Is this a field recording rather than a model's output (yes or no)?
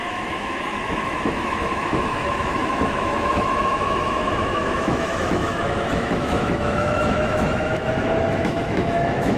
no